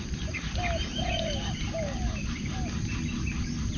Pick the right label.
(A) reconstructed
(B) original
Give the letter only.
B